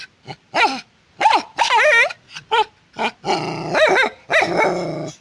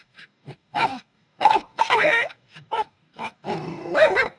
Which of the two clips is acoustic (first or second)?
first